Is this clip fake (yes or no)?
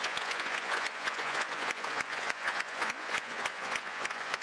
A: yes